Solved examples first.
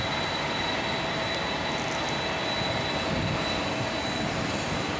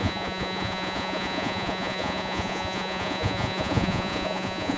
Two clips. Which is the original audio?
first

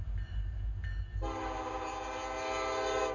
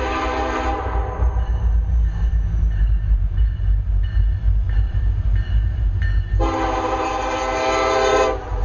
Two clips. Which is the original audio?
first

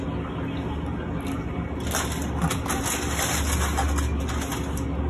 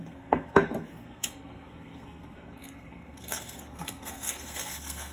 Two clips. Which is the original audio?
first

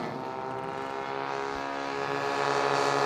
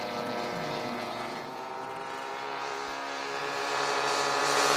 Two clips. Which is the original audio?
first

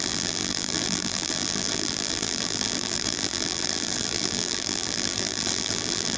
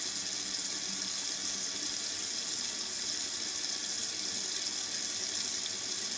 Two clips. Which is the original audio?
second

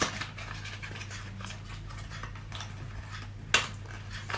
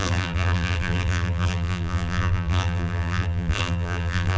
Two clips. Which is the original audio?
first